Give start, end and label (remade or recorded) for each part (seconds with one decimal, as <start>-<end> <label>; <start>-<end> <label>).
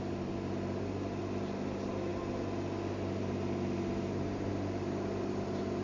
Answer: 0.0-5.8 recorded